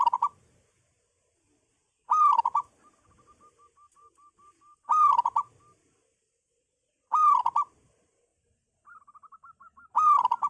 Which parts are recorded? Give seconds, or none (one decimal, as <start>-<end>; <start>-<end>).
0.0-10.5